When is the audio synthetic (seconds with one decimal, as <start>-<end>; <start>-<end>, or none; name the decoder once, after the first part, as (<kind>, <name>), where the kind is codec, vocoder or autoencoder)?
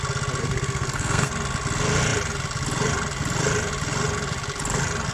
0.4-1.3 (codec, SNAC)